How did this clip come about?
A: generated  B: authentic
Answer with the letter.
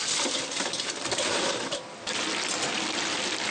B